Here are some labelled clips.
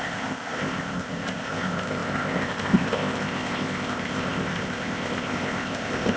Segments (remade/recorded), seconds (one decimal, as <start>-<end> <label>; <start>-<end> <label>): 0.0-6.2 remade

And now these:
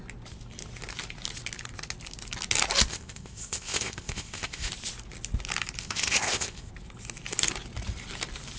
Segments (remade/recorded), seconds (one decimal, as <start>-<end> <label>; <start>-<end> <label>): 0.0-2.9 recorded; 2.9-4.7 remade; 4.7-5.8 recorded; 5.8-6.7 remade; 6.7-8.6 recorded

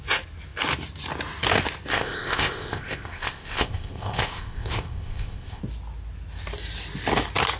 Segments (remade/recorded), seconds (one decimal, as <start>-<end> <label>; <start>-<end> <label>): 0.0-1.9 recorded; 1.9-5.6 remade; 5.6-7.6 recorded